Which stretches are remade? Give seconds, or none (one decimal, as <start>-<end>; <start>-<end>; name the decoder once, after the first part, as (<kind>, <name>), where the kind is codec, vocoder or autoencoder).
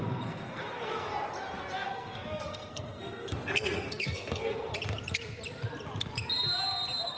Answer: 0.0-1.1 (codec, SNAC); 1.9-4.7